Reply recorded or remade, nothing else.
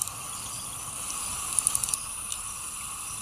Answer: recorded